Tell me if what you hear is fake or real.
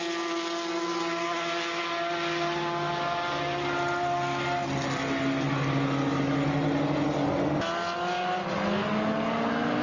real